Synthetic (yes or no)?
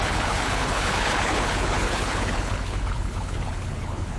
yes